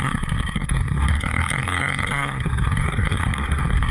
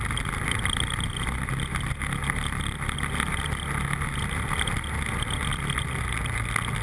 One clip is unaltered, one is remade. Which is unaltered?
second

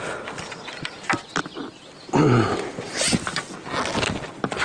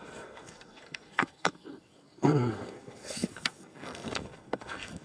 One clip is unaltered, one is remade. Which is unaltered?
first